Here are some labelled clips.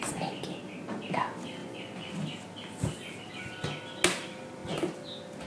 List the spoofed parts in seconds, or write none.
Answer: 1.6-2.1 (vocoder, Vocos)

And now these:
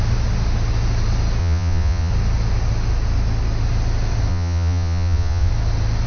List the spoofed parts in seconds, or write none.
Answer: 1.4-2.1 (vocoder, Vocos); 4.3-5.5

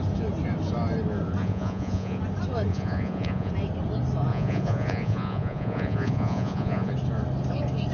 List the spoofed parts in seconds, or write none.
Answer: 1.4-2.2 (vocoder, Vocos); 2.7-3.5; 4.3-6.9

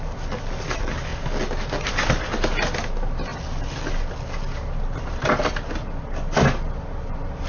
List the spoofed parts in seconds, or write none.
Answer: none

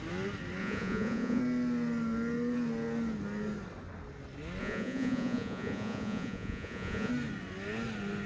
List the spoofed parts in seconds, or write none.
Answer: 0.6-1.4 (vocoder, Vocos); 4.6-7.1

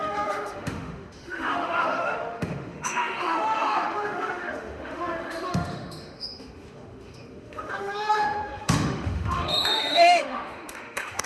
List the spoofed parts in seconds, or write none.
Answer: 0.0-11.3 (autoencoder, DAC-VAE)

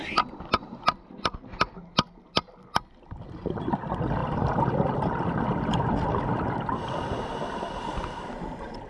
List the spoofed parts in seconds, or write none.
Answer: 4.2-8.9 (vocoder, BigVGAN v2)

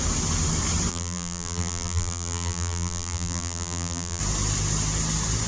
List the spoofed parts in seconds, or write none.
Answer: 0.9-4.2 (vocoder, BigVGAN v2)